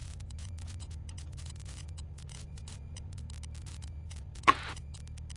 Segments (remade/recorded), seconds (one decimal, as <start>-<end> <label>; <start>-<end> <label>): 0.0-3.2 remade; 3.2-3.6 recorded; 3.6-5.0 remade; 5.0-5.4 recorded